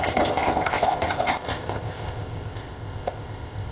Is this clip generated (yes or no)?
yes